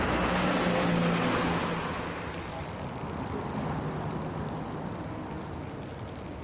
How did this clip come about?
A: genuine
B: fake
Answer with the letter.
A